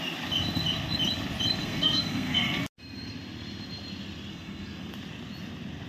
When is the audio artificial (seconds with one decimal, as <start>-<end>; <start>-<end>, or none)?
1.6-2.6; 4.3-4.9